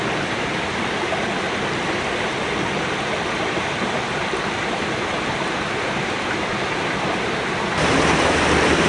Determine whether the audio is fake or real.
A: real